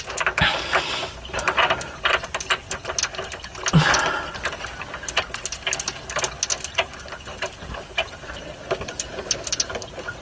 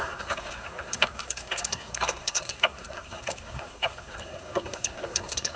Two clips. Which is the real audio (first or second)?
first